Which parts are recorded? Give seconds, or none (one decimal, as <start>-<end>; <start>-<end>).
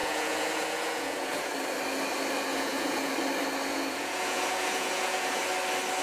1.5-2.5; 3.1-3.7; 5.4-6.0